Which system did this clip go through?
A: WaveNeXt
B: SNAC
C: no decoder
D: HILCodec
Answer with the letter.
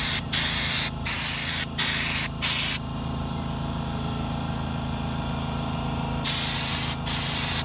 C